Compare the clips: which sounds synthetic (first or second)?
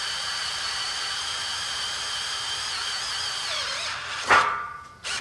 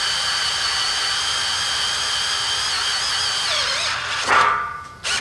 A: first